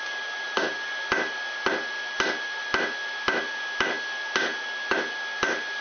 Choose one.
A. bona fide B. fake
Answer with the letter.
A